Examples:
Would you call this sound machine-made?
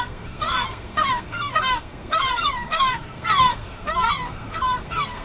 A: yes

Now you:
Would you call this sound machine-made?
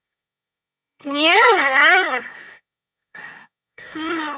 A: yes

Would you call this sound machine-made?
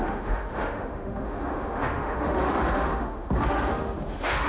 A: yes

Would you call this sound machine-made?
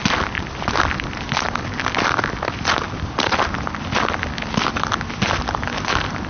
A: no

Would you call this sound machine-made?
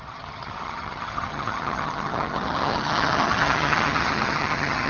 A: yes